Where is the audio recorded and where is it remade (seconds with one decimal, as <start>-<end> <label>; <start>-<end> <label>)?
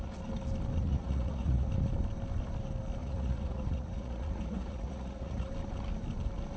0.0-0.8 recorded; 0.8-1.7 remade; 1.7-3.0 recorded; 3.0-5.5 remade; 5.5-6.6 recorded